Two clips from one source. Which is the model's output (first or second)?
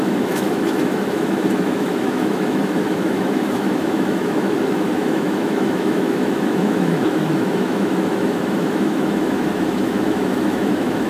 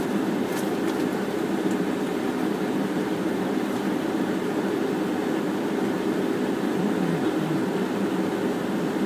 first